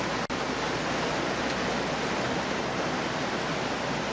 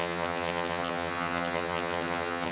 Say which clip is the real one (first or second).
first